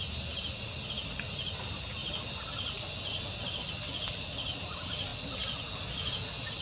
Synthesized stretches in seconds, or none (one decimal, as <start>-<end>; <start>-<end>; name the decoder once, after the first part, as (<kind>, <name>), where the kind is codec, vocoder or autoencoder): none

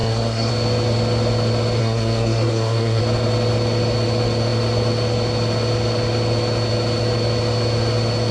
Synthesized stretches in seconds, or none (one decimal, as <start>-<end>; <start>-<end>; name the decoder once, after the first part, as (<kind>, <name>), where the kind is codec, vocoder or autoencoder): 0.0-0.5 (codec, SNAC); 1.8-3.0

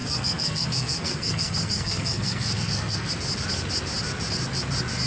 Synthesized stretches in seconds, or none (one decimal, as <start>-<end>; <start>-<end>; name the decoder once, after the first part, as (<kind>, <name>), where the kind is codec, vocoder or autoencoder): 0.0-3.1 (codec, SNAC)